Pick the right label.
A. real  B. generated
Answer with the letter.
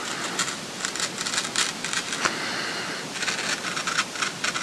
A